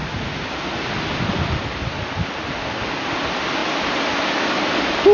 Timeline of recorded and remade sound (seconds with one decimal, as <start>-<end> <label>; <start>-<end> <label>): 0.0-5.1 recorded